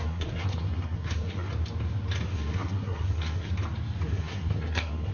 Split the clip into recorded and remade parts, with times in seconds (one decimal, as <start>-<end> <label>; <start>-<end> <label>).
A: 0.0-1.5 remade; 1.5-2.3 recorded; 2.3-3.5 remade; 3.5-4.1 recorded; 4.1-5.1 remade

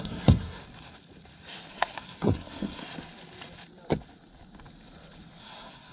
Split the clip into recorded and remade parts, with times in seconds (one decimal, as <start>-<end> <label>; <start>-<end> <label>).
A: 0.0-0.6 remade; 0.6-1.7 recorded; 1.7-2.8 remade; 2.8-5.4 recorded; 5.4-5.9 remade